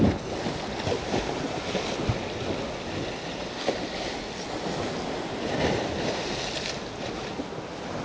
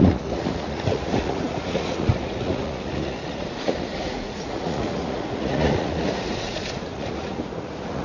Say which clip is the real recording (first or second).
first